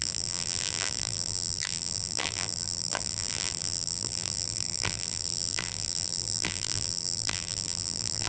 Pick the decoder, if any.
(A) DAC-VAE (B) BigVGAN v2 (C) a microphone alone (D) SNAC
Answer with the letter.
B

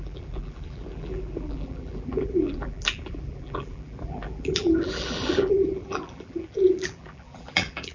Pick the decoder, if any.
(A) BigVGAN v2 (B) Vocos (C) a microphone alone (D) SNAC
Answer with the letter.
A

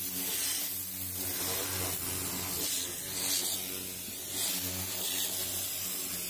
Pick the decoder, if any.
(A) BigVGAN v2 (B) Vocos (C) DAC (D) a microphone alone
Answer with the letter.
D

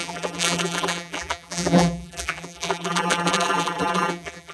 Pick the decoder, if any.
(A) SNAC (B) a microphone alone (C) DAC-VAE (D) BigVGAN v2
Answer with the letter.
D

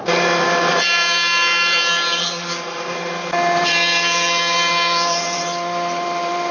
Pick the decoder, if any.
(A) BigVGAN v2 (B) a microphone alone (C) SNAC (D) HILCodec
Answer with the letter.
A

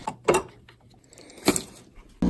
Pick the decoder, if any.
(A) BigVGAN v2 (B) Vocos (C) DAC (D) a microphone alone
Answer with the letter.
D